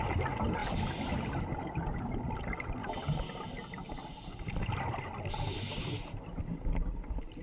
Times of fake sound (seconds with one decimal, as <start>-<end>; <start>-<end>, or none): none